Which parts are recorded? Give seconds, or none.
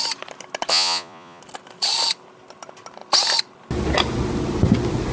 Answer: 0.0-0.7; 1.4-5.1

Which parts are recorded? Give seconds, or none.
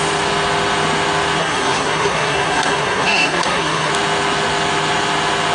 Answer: 0.0-1.4; 3.9-5.5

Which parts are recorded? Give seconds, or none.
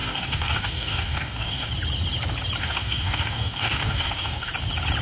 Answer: 1.7-2.6; 4.5-5.0